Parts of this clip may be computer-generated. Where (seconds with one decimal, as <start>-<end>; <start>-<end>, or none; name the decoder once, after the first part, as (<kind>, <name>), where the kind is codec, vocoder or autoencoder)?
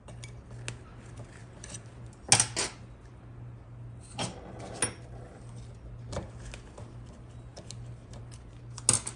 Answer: none